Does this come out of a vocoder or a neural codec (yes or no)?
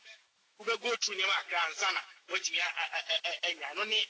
yes